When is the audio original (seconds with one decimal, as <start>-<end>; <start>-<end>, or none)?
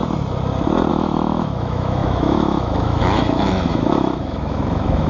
0.0-0.9